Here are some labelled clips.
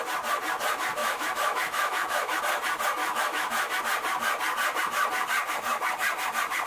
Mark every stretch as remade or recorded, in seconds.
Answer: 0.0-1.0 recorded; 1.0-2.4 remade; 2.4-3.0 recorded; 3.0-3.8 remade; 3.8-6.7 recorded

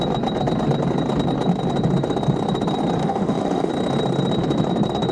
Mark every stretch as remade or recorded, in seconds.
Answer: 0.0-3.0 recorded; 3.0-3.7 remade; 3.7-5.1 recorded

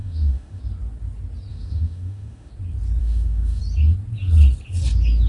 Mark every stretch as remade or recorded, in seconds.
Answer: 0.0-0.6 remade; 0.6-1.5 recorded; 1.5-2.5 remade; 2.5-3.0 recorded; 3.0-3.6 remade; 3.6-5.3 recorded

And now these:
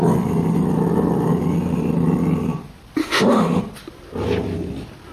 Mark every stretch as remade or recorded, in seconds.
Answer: 0.0-3.0 recorded; 3.0-3.6 remade; 3.6-5.1 recorded

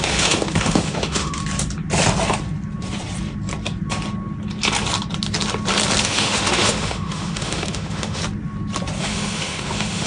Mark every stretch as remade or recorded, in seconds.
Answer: 0.0-1.4 remade; 1.4-6.0 recorded; 6.0-8.2 remade; 8.2-9.0 recorded; 9.0-10.1 remade

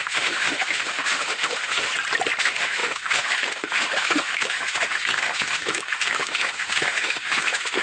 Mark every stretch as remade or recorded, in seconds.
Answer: 0.0-1.9 remade; 1.9-2.4 recorded; 2.4-7.8 remade

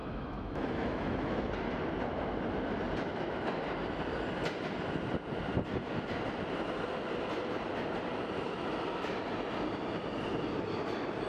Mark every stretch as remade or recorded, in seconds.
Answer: 0.0-1.5 remade; 1.5-3.1 recorded; 3.1-3.6 remade; 3.6-11.3 recorded

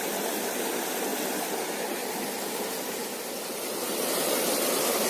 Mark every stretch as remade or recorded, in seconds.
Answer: 0.0-5.1 recorded